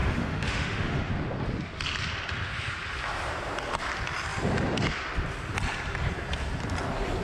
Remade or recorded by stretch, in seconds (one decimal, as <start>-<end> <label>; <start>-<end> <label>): 0.0-1.1 remade; 1.1-7.2 recorded